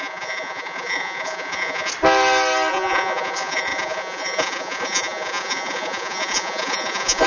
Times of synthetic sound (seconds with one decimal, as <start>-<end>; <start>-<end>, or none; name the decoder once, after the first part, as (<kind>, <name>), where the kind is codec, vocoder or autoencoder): 0.0-1.9 (vocoder, Vocos); 2.7-7.3